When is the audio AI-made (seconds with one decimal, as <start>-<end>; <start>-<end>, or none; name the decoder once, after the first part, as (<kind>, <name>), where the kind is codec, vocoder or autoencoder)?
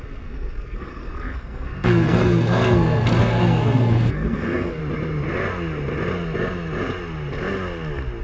0.0-4.8 (codec, SNAC)